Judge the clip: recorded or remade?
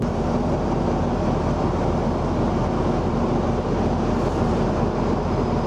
recorded